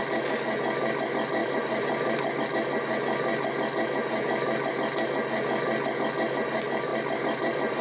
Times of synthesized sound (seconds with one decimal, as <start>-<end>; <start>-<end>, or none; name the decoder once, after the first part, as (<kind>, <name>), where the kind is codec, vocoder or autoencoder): 1.4-2.4 (vocoder, BigVGAN v2); 6.9-7.8